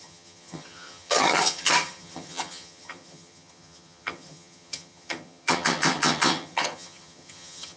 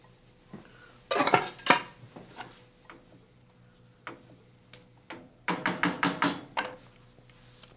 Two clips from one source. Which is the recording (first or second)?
second